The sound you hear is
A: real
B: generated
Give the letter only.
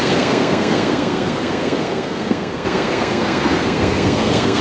B